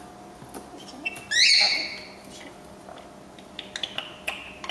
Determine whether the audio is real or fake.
real